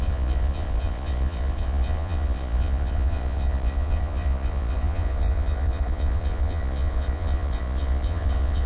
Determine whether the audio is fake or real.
fake